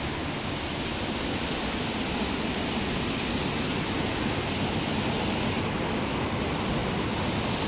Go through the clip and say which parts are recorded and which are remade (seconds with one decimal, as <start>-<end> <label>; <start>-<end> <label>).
0.0-7.7 recorded